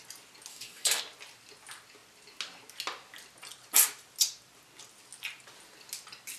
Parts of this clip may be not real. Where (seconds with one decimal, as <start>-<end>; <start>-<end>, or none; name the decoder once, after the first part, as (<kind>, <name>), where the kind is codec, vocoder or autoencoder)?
0.5-1.0 (codec, DAC)